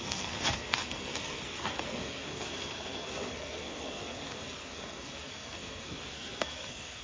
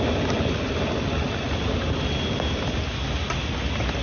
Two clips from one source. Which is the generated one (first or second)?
first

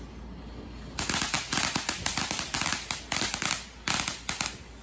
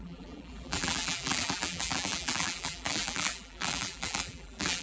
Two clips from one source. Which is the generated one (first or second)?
second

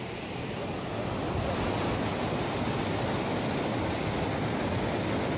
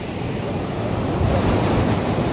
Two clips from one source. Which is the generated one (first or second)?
second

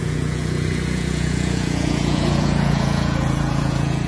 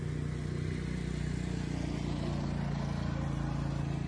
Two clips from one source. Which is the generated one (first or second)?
first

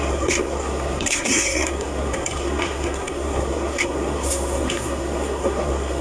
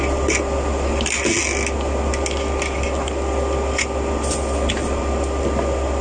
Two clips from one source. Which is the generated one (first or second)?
first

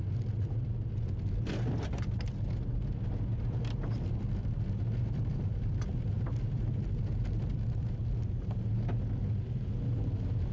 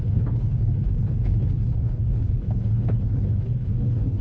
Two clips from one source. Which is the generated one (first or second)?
second